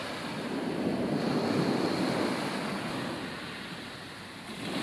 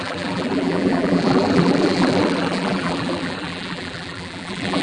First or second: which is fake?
second